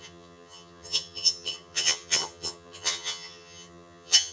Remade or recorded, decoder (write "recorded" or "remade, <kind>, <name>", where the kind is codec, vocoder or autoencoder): remade, vocoder, HiFi-GAN